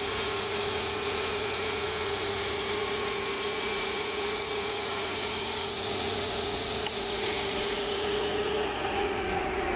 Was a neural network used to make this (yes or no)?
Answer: yes